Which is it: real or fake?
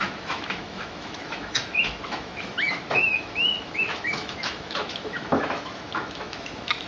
fake